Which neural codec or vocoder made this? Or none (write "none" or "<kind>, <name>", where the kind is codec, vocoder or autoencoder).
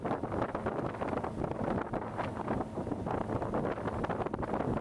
none